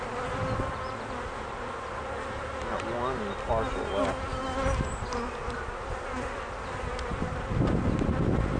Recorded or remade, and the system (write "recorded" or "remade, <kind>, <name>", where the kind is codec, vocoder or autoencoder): recorded